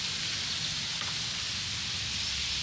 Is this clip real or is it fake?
real